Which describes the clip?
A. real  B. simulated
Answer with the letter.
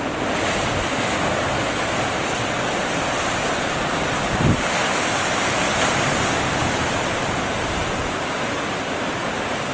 A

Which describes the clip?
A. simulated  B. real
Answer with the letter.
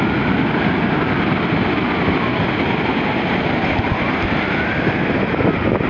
B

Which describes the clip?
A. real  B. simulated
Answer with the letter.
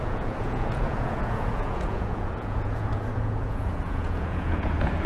B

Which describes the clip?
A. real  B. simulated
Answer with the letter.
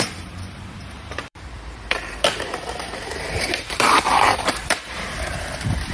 B